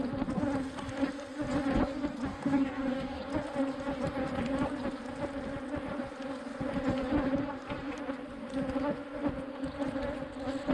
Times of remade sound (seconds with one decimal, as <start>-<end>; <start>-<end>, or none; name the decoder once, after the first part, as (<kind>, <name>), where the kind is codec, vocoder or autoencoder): 2.3-3.2 (codec, DAC)